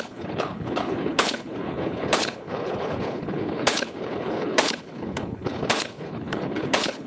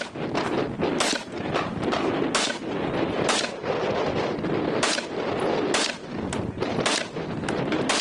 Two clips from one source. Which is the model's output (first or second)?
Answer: first